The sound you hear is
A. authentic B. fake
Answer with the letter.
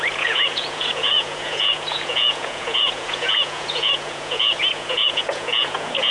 B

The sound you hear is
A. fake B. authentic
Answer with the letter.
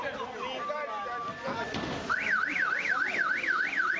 B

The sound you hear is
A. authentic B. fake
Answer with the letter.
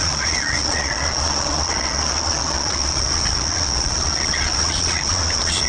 B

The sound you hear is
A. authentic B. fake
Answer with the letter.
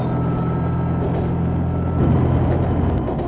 A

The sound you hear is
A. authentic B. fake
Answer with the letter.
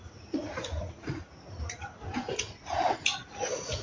B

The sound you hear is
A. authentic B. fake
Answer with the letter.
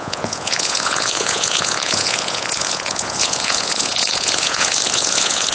B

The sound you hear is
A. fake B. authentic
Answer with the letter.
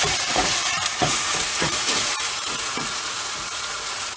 A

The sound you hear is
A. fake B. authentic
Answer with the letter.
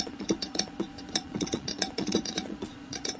A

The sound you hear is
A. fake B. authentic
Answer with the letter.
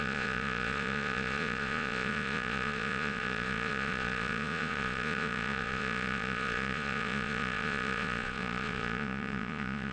A